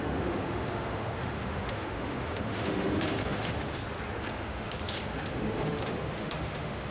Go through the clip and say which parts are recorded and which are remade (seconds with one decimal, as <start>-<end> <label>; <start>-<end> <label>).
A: 0.0-3.8 remade; 3.8-4.3 recorded; 4.3-6.9 remade